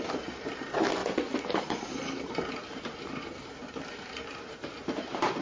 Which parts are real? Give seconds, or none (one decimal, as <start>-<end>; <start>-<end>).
1.0-1.5